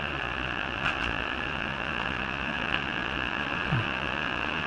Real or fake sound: fake